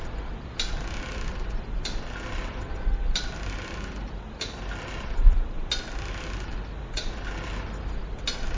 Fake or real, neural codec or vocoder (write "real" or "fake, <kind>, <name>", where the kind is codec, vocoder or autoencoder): real